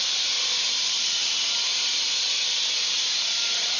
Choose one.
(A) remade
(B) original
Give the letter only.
A